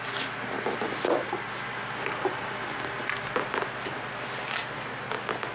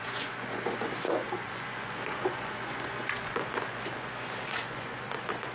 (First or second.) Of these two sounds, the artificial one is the second